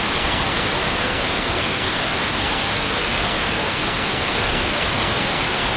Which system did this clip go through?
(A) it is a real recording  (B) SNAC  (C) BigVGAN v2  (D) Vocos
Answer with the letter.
B